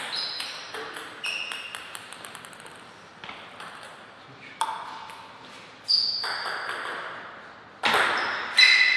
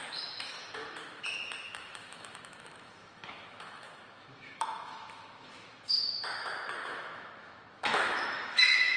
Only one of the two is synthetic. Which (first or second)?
second